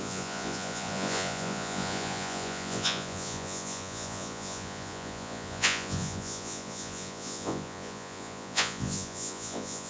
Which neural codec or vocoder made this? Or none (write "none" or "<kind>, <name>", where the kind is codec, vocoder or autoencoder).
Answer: vocoder, Vocos